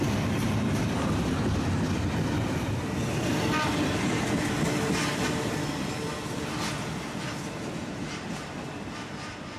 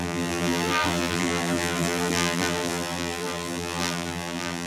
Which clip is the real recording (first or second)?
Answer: first